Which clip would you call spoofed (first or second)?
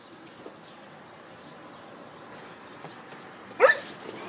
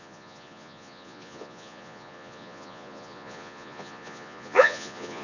second